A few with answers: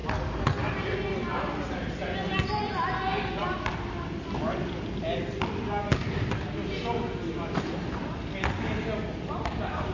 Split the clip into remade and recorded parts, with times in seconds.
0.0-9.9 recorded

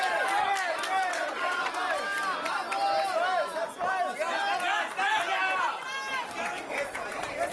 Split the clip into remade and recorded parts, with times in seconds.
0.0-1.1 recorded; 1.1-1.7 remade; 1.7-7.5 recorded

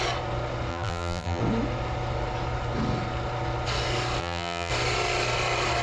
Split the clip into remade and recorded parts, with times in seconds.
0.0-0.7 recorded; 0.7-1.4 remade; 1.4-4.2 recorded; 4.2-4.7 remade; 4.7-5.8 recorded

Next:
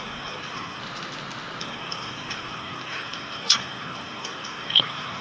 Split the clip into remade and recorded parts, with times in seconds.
0.0-0.8 remade; 0.8-1.6 recorded; 1.6-5.2 remade